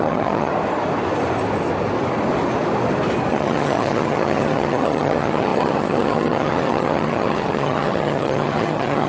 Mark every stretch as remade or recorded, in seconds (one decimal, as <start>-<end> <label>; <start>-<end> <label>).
0.0-0.5 remade; 0.5-3.3 recorded; 3.3-9.1 remade

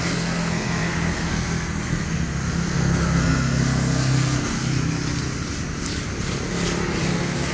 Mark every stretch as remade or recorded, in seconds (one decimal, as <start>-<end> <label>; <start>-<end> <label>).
0.0-4.6 remade; 4.6-7.0 recorded; 7.0-7.5 remade

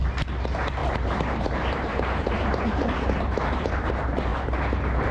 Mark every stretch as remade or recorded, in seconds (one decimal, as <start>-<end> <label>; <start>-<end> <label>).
0.0-0.8 recorded; 0.8-3.9 remade; 3.9-5.1 recorded

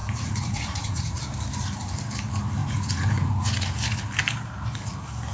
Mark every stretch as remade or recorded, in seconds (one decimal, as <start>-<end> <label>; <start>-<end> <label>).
0.0-1.2 remade; 1.2-2.6 recorded; 2.6-3.3 remade; 3.3-5.3 recorded

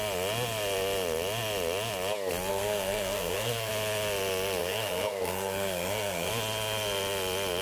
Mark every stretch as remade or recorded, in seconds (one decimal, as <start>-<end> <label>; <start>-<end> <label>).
0.0-2.5 recorded; 2.5-3.7 remade; 3.7-4.6 recorded; 4.6-6.3 remade; 6.3-7.6 recorded

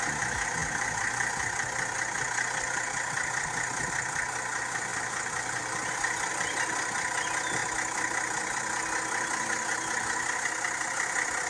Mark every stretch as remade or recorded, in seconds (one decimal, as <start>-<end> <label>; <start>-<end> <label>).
0.0-11.5 recorded

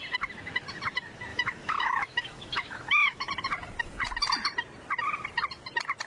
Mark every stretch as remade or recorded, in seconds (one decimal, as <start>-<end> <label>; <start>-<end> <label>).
0.0-1.3 recorded; 1.3-3.3 remade; 3.3-6.1 recorded

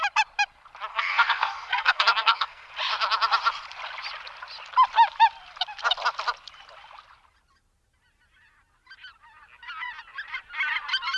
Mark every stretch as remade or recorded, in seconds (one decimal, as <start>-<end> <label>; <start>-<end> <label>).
0.0-0.9 recorded; 0.9-2.7 remade; 2.7-11.2 recorded